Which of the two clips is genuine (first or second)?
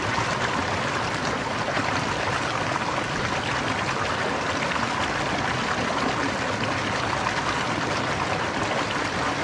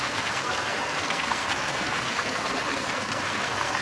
first